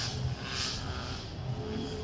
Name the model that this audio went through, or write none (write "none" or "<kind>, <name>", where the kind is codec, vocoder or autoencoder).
none